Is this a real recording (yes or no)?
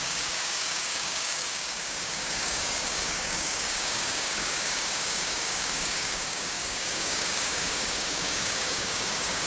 no